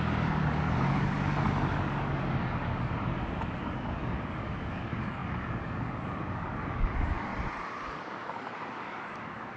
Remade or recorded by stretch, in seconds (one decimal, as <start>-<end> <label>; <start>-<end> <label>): 0.0-7.3 remade; 7.3-7.8 recorded; 7.8-9.6 remade